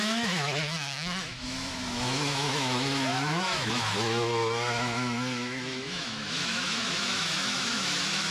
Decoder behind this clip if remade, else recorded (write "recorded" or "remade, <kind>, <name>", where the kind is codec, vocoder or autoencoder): remade, autoencoder, DAC-VAE